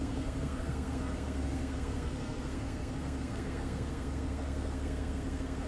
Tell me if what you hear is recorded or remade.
remade